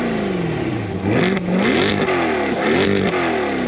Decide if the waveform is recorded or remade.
recorded